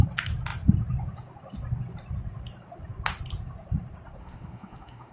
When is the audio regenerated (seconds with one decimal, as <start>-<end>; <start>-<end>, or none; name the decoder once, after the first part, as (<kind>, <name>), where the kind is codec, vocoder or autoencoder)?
4.2-5.1 (autoencoder, DAC-VAE)